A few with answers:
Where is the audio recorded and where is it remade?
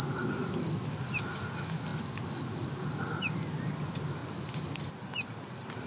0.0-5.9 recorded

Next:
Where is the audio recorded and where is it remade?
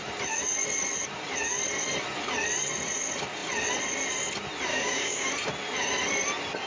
0.0-4.7 recorded; 4.7-5.3 remade; 5.3-6.7 recorded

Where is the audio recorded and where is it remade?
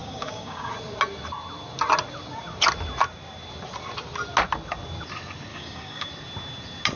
0.0-0.7 remade; 0.7-5.5 recorded; 5.5-6.1 remade; 6.1-7.0 recorded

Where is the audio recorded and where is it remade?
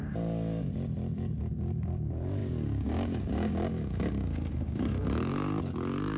0.0-0.7 remade; 0.7-1.4 recorded; 1.4-6.2 remade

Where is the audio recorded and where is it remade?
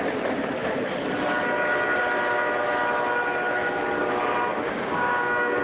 0.0-4.5 recorded; 4.5-5.6 remade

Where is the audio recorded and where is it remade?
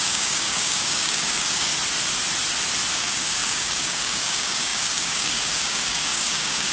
0.0-1.7 remade; 1.7-2.9 recorded; 2.9-6.7 remade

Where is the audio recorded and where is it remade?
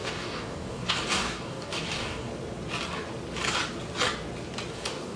0.0-2.3 remade; 2.3-4.7 recorded; 4.7-5.2 remade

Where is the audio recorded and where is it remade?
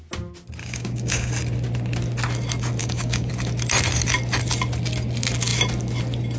0.0-0.6 recorded; 0.6-1.3 remade; 1.3-2.8 recorded; 2.8-3.3 remade; 3.3-6.4 recorded